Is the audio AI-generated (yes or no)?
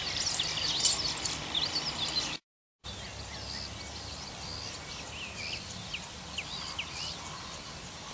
no